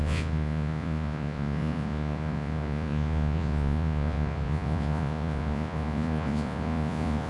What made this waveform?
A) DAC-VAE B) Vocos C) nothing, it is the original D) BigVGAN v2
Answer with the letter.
B